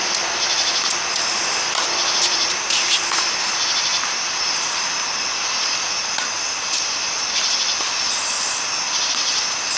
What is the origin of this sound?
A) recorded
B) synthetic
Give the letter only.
A